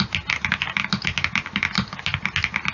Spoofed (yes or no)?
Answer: no